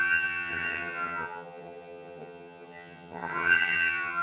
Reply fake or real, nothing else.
fake